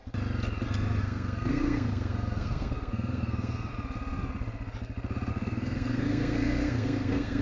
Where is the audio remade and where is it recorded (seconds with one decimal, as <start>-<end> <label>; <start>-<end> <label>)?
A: 0.0-1.0 recorded; 1.0-3.7 remade; 3.7-5.3 recorded; 5.3-7.4 remade